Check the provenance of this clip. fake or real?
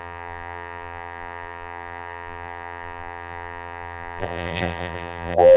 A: fake